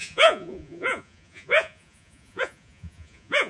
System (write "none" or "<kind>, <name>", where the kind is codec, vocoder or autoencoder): vocoder, Vocos